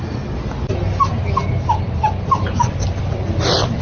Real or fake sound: real